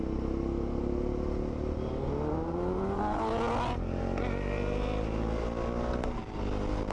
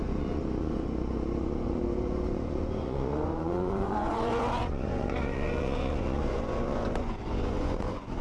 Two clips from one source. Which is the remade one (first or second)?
second